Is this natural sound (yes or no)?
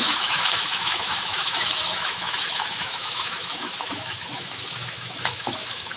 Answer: no